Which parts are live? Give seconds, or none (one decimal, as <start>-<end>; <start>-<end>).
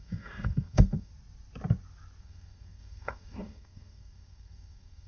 1.1-2.2